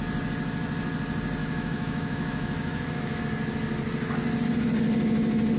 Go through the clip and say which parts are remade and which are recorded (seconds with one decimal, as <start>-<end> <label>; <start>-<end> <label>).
0.0-1.4 recorded; 1.4-3.2 remade; 3.2-5.6 recorded